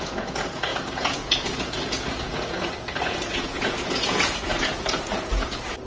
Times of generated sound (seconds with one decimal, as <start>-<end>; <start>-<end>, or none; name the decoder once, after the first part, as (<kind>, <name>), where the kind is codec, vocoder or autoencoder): 0.0-5.9 (vocoder, Vocos)

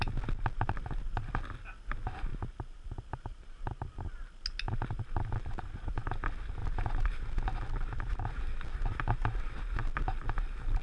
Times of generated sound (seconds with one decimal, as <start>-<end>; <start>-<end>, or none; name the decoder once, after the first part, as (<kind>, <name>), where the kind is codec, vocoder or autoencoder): 2.3-4.1 (vocoder, BigVGAN v2); 6.6-7.1

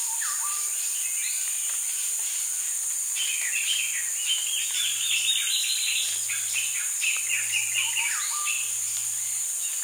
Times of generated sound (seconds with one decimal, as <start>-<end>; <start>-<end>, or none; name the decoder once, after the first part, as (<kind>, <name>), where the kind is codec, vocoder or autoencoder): none

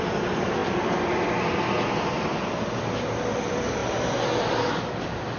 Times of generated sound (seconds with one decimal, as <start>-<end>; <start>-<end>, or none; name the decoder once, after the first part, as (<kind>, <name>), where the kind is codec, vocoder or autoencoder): none

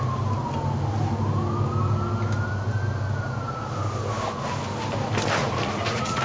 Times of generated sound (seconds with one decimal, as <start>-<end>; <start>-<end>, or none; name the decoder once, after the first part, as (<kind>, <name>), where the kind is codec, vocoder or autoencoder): 5.4-6.2 (vocoder, Vocos)

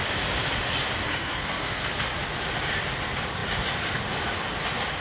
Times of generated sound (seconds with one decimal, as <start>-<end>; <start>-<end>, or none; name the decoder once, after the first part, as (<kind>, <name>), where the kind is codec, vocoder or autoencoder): 1.1-1.8 (codec, SNAC)

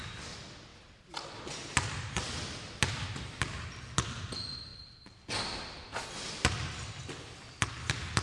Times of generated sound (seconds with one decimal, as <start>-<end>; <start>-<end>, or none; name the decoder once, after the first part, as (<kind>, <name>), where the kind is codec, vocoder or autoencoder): none